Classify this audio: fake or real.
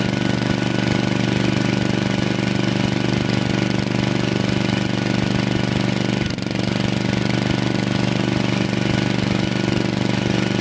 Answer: real